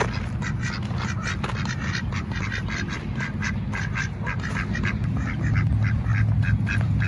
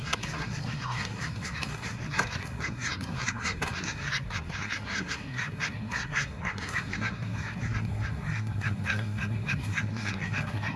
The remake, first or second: second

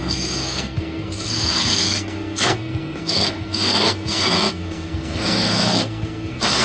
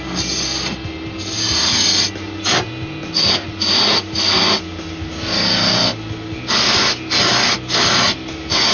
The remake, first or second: first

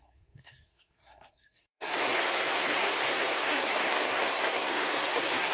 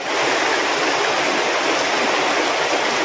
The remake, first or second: first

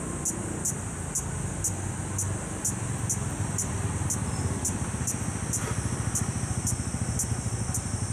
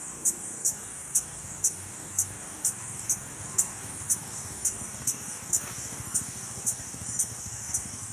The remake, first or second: second